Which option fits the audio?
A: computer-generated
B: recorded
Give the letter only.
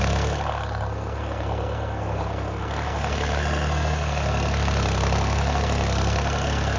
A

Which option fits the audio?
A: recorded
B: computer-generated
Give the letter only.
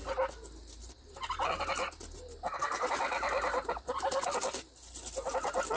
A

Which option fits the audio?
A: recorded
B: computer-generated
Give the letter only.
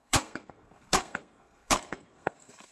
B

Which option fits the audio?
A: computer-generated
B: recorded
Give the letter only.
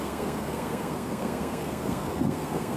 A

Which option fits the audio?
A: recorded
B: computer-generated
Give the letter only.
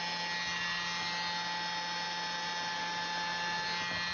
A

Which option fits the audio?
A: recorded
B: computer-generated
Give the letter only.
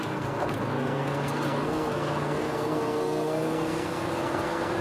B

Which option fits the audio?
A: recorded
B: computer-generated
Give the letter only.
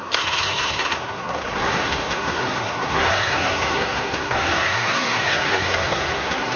B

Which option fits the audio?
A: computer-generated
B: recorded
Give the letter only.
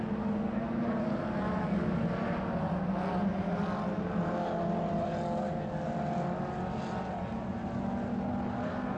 B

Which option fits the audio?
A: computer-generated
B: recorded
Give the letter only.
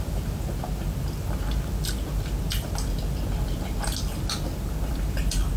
B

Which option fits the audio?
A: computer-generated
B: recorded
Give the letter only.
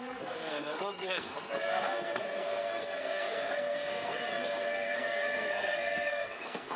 A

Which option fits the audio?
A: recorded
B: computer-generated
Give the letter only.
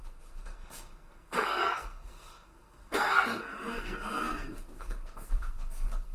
B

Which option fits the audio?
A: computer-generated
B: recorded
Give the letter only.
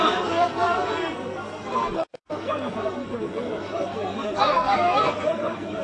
A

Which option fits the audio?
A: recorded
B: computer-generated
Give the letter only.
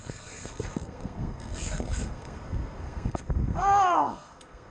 B